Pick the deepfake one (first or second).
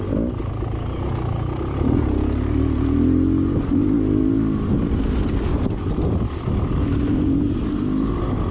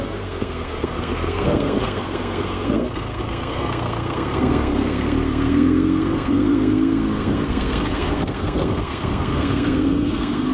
second